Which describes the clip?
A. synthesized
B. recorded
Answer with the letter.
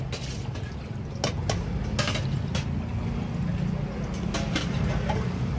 B